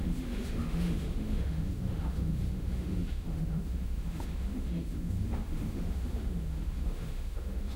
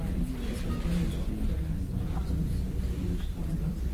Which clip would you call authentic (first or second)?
second